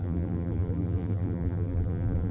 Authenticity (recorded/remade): remade